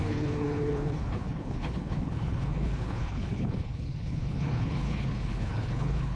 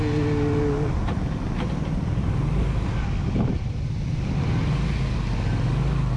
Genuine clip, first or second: second